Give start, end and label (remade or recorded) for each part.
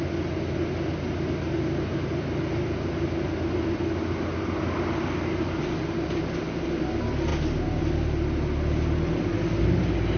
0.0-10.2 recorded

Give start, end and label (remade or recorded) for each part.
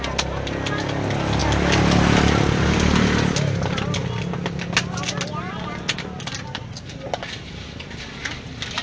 0.0-8.8 recorded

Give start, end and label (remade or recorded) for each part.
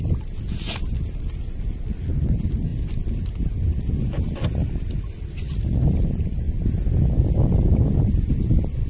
0.0-8.9 recorded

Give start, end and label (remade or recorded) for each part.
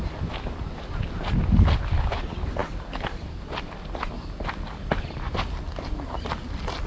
0.0-6.9 recorded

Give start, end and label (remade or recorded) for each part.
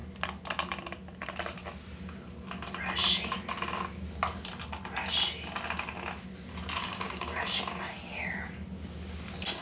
0.0-6.8 recorded; 6.8-7.4 remade; 7.4-9.6 recorded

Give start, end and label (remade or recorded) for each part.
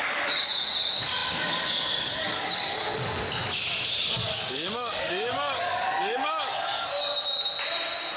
0.0-2.9 remade; 2.9-4.0 recorded; 4.0-7.0 remade; 7.0-8.2 recorded